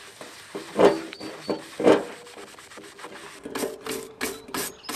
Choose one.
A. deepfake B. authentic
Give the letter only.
B